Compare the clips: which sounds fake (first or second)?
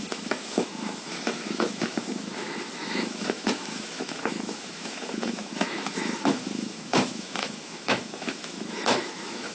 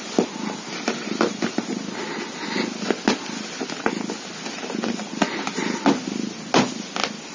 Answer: first